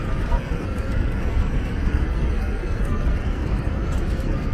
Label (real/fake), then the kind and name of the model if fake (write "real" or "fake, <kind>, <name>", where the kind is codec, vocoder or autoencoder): fake, codec, SNAC